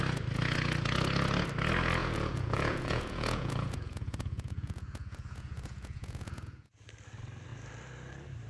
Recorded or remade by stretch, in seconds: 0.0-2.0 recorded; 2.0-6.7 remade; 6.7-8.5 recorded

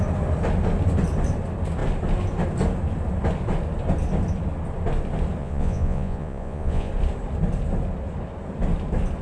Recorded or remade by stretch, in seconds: 0.0-5.4 recorded; 5.4-6.9 remade; 6.9-9.2 recorded